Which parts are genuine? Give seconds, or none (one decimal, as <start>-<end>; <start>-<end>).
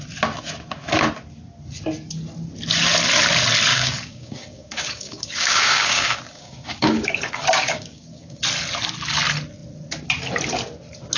0.0-3.7; 8.4-11.2